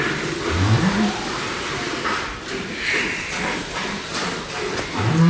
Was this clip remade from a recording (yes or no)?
no